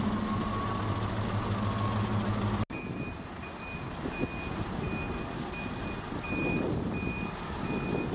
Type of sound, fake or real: real